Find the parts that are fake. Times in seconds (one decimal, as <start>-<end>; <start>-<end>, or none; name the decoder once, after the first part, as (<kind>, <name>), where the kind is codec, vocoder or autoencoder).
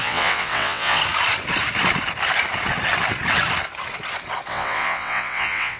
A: 0.0-1.0 (vocoder, WaveNeXt); 4.5-5.8